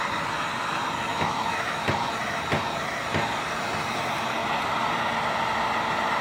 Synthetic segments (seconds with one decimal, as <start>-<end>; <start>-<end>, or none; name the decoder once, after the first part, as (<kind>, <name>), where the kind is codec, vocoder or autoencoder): 1.1-1.9 (autoencoder, DAC-VAE)